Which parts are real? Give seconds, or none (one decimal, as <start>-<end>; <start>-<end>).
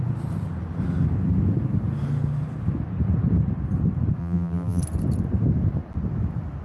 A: 0.0-4.2; 4.8-6.6